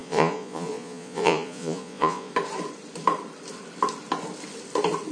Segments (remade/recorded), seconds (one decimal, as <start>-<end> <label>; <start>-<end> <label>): 0.0-2.3 remade; 2.3-5.1 recorded